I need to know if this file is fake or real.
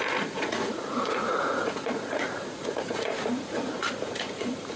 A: fake